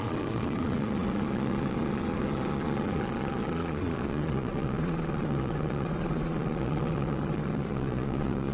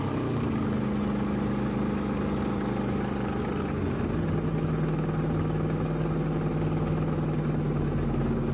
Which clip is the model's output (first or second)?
first